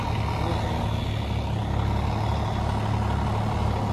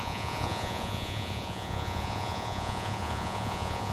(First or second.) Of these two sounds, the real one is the first